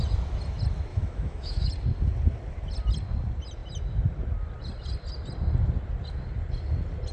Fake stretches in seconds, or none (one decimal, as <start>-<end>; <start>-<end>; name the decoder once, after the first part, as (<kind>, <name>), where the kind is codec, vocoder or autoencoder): 0.9-1.7 (autoencoder, DAC-VAE)